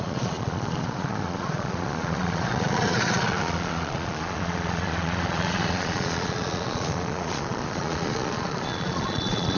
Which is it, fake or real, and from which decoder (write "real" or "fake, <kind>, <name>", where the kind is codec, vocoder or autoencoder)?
fake, vocoder, Vocos